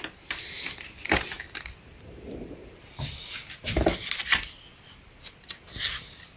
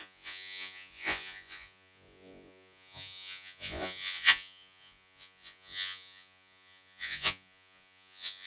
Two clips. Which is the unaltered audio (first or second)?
first